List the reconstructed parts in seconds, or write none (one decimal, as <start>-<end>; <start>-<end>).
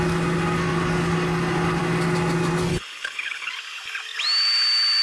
2.7-3.5